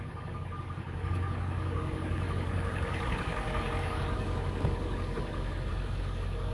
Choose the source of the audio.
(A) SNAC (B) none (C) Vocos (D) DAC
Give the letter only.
D